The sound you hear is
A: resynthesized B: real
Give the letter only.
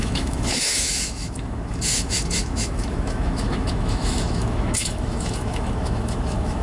A